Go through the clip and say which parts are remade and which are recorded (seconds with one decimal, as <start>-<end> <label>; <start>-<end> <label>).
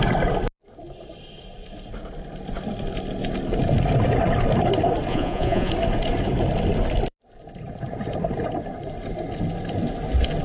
0.0-5.1 recorded; 5.1-5.7 remade; 5.7-10.4 recorded